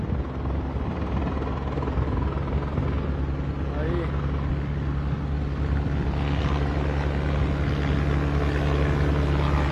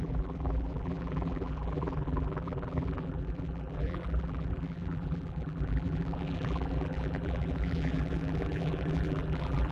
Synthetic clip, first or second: second